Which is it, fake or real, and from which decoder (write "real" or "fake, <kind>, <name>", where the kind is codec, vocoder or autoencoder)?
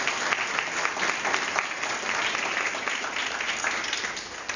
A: real